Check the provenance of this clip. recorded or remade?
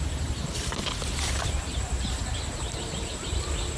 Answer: recorded